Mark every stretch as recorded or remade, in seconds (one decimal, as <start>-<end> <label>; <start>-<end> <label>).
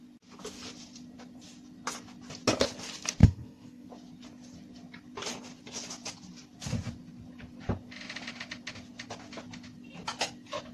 0.0-3.2 recorded; 3.2-3.9 remade; 3.9-10.7 recorded